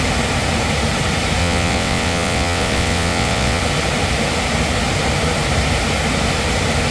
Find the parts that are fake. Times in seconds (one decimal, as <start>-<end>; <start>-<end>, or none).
1.4-3.6